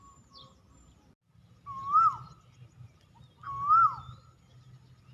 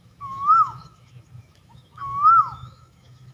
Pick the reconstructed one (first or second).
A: second